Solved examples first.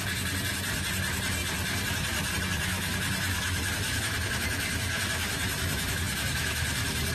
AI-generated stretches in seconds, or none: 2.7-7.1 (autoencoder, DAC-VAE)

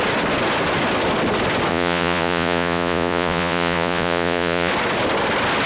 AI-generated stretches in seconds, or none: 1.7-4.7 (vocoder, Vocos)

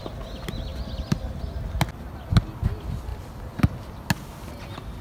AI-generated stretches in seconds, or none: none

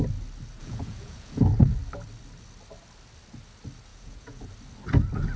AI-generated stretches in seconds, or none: 0.6-1.4 (vocoder, Vocos); 3.9-4.4